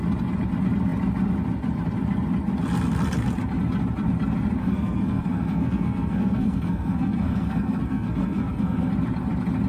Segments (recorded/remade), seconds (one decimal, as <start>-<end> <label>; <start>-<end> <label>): 0.0-4.6 recorded; 4.6-8.9 remade; 8.9-9.7 recorded